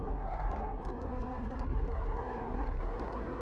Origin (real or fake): fake